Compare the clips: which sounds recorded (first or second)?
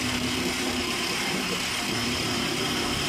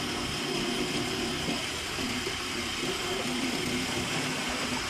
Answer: first